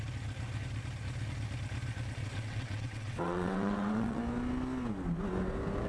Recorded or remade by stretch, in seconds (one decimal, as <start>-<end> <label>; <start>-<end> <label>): 0.0-2.2 recorded; 2.2-4.2 remade; 4.2-5.9 recorded